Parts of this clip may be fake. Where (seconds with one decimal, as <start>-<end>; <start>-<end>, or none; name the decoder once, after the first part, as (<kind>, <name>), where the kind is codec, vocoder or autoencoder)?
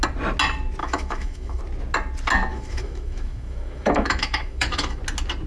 0.8-1.6 (autoencoder, DAC-VAE); 2.5-5.0